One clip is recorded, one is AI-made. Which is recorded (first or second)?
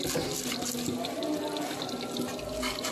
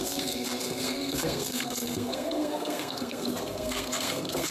first